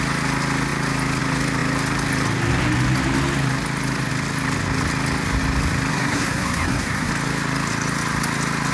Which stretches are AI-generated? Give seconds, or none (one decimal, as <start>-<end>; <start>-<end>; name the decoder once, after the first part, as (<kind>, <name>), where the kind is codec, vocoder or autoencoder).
5.9-7.1 (codec, SNAC)